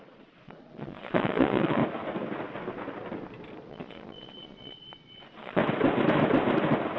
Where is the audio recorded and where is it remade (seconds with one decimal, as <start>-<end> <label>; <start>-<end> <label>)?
0.0-1.8 remade; 1.8-3.7 recorded; 3.7-5.6 remade; 5.6-7.0 recorded